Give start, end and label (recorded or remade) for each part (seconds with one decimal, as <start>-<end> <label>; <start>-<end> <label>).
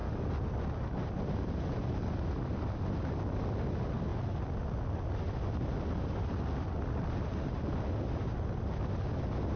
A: 0.0-9.6 recorded